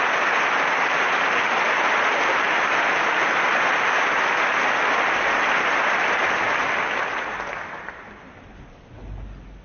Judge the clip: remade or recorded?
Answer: recorded